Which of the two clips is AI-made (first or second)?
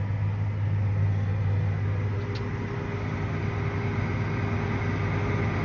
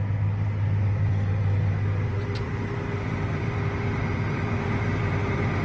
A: second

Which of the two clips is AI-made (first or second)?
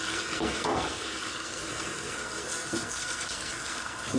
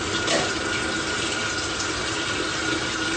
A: first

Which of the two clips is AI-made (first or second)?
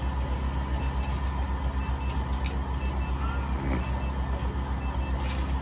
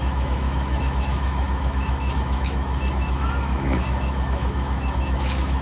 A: second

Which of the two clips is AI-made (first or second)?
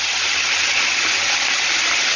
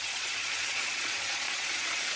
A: second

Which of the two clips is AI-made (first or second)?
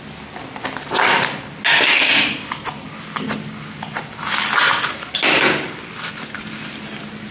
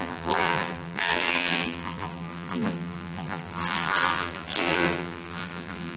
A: second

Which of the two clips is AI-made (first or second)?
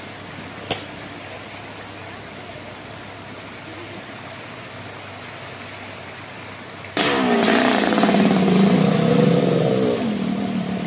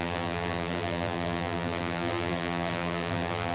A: second